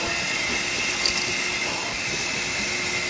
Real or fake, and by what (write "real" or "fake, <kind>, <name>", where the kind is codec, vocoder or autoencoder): real